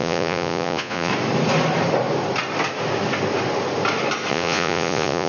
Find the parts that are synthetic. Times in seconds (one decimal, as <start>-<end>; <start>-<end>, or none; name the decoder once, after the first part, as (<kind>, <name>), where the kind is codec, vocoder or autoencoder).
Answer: 0.0-1.1 (vocoder, Vocos); 4.3-5.3